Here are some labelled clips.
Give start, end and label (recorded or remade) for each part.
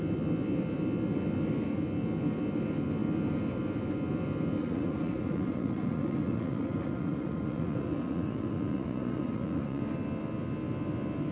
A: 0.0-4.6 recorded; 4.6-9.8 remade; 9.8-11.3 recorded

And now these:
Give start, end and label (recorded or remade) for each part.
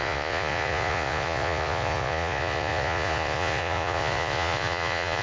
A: 0.0-5.2 remade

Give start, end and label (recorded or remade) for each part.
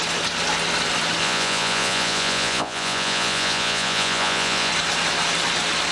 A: 0.0-1.2 recorded; 1.2-4.7 remade; 4.7-5.9 recorded